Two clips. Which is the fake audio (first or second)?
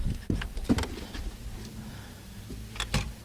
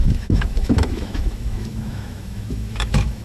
second